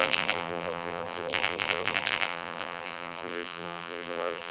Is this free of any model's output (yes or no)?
no